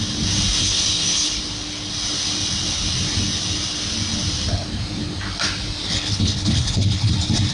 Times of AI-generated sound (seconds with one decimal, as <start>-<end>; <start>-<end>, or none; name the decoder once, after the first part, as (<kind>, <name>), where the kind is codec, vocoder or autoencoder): 0.6-1.4 (codec, HILCodec); 6.0-7.1